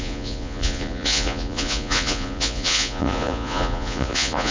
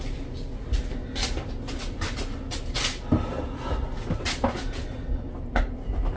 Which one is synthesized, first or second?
first